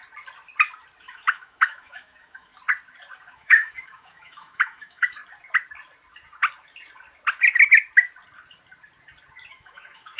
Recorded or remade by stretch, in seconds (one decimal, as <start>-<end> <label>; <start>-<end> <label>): 0.0-1.0 recorded; 1.0-2.5 remade; 2.5-3.3 recorded; 3.3-5.2 remade; 5.2-9.5 recorded; 9.5-10.2 remade